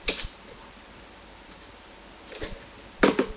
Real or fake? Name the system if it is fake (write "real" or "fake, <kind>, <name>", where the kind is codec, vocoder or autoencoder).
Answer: fake, vocoder, BigVGAN v2